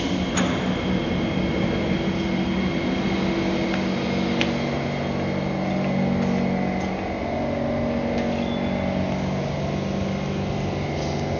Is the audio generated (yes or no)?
no